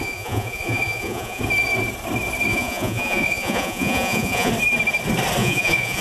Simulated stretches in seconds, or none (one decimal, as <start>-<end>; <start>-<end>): 0.0-1.4; 2.5-4.5; 5.4-6.0